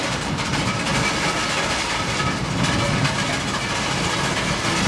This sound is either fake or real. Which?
real